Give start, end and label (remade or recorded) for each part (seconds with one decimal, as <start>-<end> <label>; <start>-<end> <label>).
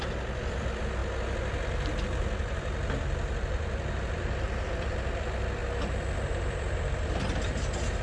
0.0-1.0 remade; 1.0-2.0 recorded; 2.0-5.6 remade; 5.6-6.4 recorded; 6.4-8.0 remade